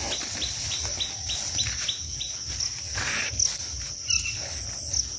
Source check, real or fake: real